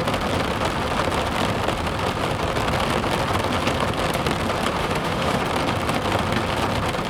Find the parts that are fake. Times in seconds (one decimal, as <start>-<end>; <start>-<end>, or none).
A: 4.8-5.4